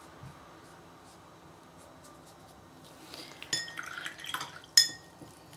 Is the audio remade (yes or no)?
no